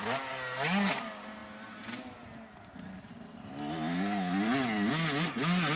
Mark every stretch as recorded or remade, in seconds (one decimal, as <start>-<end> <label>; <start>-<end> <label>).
0.0-5.8 recorded